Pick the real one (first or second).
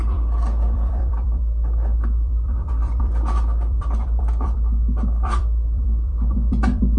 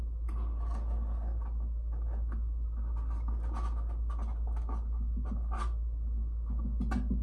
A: second